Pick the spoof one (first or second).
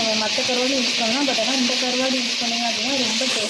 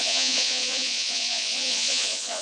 second